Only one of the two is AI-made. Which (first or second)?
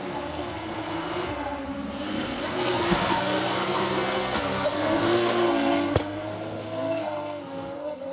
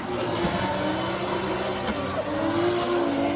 first